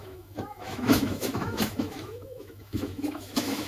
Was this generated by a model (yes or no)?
yes